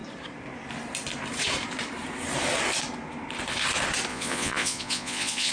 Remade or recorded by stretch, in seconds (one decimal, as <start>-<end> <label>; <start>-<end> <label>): 0.0-4.1 recorded; 4.1-5.5 remade